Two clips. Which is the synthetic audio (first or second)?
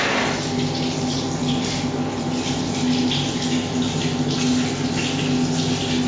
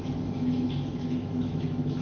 second